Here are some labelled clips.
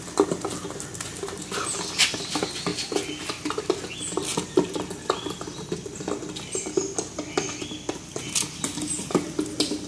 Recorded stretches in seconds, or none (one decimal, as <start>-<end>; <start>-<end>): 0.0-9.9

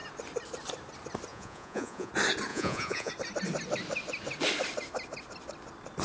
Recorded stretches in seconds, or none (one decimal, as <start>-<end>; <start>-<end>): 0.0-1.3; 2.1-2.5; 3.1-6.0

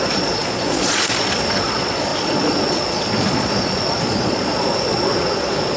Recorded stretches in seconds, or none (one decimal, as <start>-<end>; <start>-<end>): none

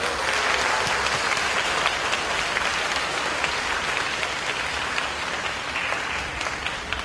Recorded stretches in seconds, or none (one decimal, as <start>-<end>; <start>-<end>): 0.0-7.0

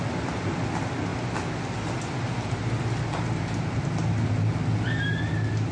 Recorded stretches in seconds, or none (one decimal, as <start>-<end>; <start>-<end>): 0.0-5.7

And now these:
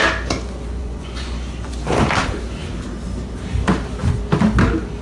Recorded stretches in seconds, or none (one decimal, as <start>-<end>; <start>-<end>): 0.0-0.8; 1.7-5.0